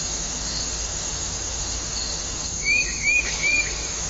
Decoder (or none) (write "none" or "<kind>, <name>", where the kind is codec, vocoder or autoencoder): autoencoder, DAC-VAE